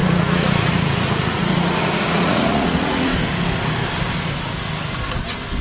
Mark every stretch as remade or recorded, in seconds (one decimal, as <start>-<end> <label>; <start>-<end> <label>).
0.0-3.1 remade; 3.1-5.6 recorded